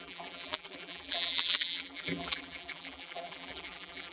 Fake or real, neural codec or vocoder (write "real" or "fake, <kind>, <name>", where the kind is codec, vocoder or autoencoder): fake, vocoder, BigVGAN v2